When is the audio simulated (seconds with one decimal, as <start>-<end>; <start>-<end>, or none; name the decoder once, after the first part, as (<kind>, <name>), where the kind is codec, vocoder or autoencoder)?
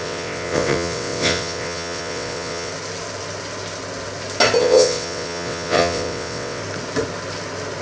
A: 0.0-2.7 (vocoder, WaveNeXt); 4.6-6.6